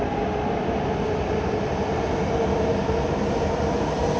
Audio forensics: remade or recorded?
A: recorded